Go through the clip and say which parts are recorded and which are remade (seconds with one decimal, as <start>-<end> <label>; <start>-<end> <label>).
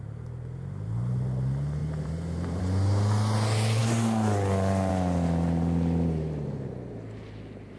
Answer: 0.0-1.8 recorded; 1.8-2.6 remade; 2.6-7.8 recorded